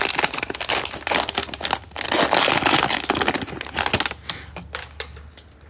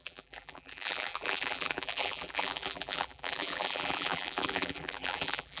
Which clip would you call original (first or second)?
first